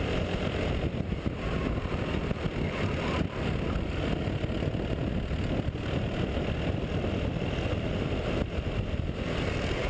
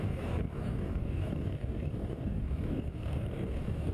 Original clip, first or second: first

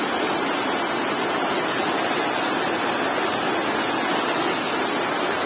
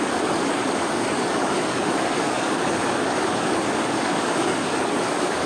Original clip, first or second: first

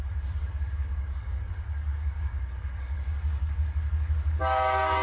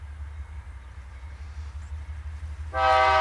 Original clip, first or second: second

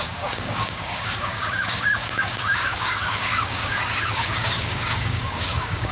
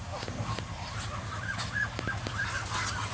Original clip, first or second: second